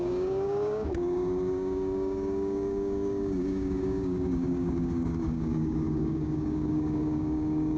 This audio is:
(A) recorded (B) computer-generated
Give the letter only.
B